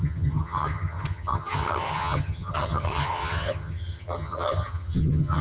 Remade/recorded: remade